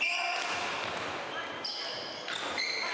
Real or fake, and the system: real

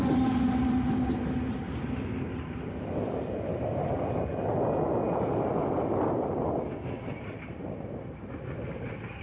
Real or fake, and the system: real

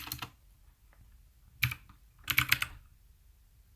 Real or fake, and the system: real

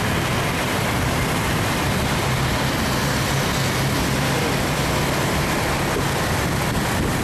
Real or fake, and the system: real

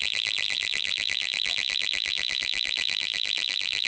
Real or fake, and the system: fake, vocoder, BigVGAN v2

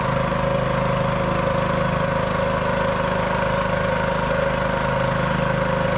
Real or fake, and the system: real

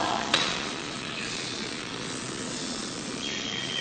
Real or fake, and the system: fake, vocoder, Vocos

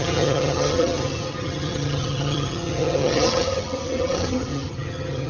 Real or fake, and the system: fake, vocoder, HiFi-GAN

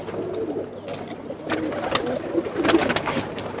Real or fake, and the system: real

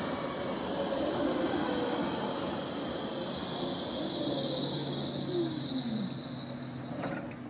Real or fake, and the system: real